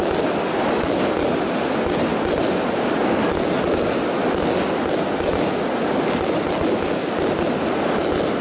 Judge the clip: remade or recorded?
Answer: recorded